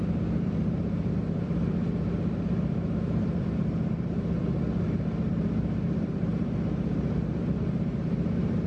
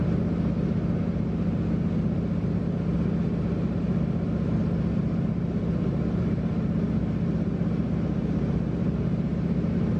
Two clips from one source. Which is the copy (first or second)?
first